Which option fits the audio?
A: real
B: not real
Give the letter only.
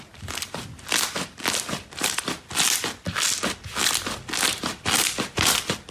A